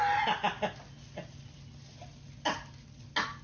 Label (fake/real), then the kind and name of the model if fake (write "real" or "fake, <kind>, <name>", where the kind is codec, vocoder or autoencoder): real